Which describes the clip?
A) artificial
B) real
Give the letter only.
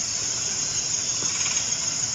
B